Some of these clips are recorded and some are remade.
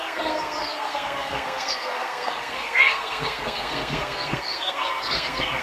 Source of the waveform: remade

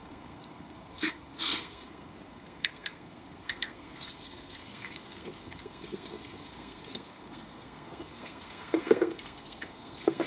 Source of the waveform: remade